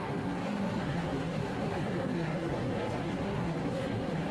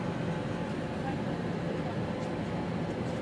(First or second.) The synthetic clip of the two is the first